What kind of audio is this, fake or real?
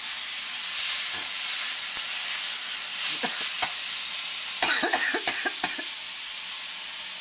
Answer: real